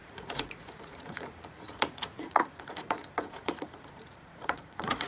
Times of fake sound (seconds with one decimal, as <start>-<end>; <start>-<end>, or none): 0.0-5.1